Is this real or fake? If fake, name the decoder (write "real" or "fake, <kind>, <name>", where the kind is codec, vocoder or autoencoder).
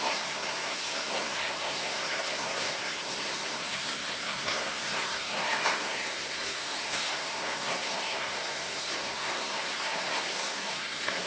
fake, codec, SNAC